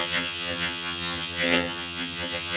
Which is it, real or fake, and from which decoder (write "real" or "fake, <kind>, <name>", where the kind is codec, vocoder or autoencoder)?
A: fake, vocoder, HiFi-GAN